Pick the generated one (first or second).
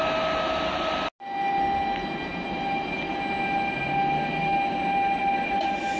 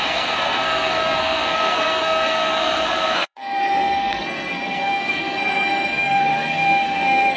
second